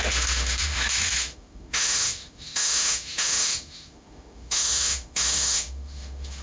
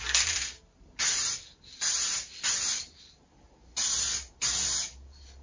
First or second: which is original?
second